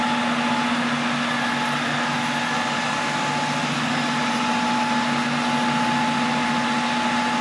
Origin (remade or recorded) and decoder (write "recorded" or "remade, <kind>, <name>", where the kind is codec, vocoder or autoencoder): recorded